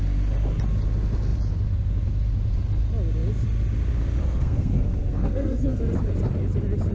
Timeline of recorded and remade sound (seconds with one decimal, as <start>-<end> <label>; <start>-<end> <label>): 0.0-4.2 recorded; 4.2-5.8 remade; 5.8-6.9 recorded